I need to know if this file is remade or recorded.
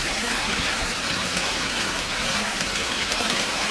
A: remade